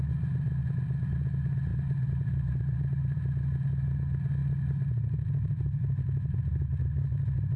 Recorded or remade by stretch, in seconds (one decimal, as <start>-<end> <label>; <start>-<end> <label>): 0.0-1.7 recorded; 1.7-3.2 remade; 3.2-7.6 recorded